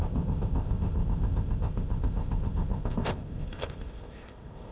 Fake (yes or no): yes